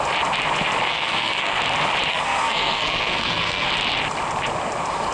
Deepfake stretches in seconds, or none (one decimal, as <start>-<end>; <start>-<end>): 0.9-1.6; 2.1-3.7